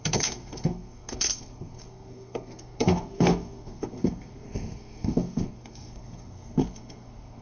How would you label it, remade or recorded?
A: remade